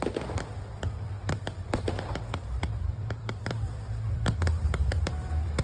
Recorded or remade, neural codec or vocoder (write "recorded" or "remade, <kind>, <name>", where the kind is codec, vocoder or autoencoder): remade, vocoder, BigVGAN v2